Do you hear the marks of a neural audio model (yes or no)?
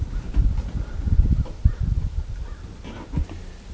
no